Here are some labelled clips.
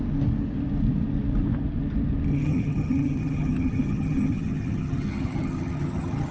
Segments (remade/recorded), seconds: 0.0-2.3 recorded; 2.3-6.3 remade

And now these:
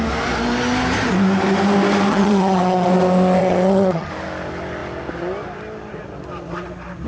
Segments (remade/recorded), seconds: 0.0-2.1 recorded; 2.1-2.9 remade; 2.9-3.4 recorded; 3.4-4.1 remade; 4.1-7.1 recorded

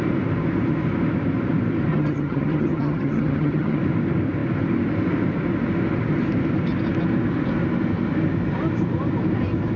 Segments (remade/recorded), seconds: 0.0-1.9 recorded; 1.9-3.8 remade; 3.8-9.8 recorded

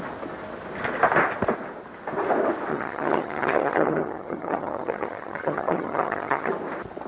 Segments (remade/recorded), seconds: 0.0-2.7 recorded; 2.7-6.5 remade; 6.5-7.1 recorded

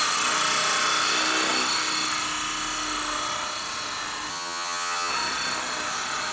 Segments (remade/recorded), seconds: 0.0-4.3 recorded; 4.3-5.1 remade; 5.1-6.3 recorded

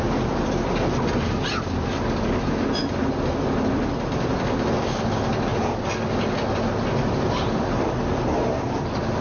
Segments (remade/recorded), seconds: 0.0-9.2 recorded

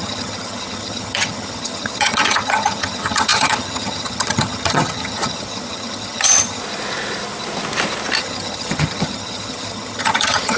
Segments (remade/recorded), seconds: 0.0-6.6 remade; 6.6-8.2 recorded; 8.2-10.6 remade

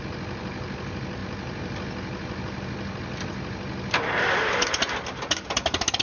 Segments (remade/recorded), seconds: 0.0-6.0 recorded